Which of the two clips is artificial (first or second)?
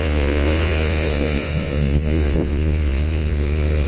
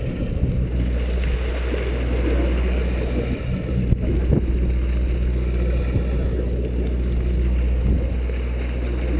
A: first